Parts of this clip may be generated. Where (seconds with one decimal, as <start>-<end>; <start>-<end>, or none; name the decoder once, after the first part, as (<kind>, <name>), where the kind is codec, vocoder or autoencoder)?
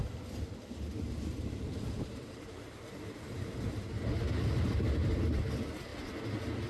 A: 1.3-5.3 (vocoder, BigVGAN v2)